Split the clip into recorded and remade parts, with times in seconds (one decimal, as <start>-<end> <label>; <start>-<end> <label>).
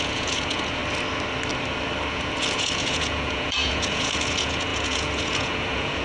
0.0-0.8 remade; 0.8-2.1 recorded; 2.1-6.0 remade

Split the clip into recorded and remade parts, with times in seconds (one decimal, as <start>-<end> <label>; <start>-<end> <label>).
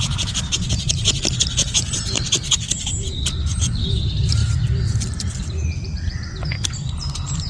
0.0-4.4 remade; 4.4-5.3 recorded; 5.3-7.5 remade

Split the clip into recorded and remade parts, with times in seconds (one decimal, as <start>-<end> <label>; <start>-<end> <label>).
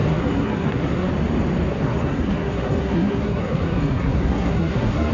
0.0-1.1 remade; 1.1-1.7 recorded; 1.7-5.1 remade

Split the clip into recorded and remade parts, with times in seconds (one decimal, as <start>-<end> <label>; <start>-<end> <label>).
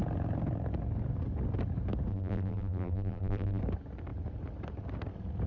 0.0-2.1 recorded; 2.1-3.6 remade; 3.6-5.5 recorded